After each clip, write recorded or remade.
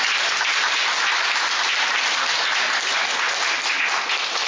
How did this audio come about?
recorded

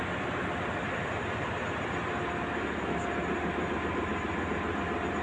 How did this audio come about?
recorded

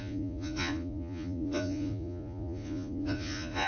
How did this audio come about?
remade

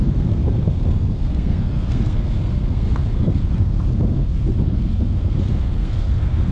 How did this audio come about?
remade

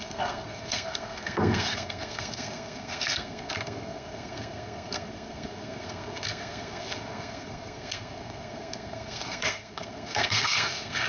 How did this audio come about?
remade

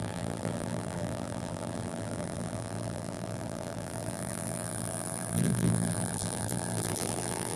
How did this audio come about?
remade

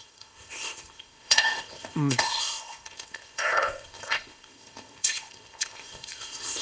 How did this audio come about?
remade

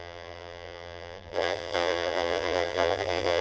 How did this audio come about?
remade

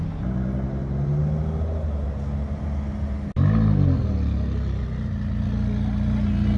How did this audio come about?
recorded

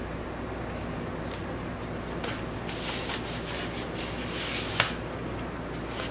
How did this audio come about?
recorded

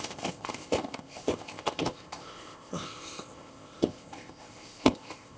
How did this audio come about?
remade